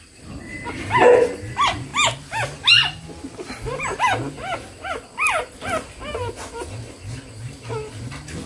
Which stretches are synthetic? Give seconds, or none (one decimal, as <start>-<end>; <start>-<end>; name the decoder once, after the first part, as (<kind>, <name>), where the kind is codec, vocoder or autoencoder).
none